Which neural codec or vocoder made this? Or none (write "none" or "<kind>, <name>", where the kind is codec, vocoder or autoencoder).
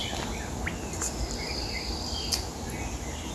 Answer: none